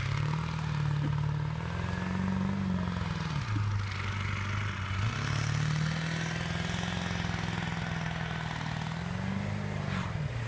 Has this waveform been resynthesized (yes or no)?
no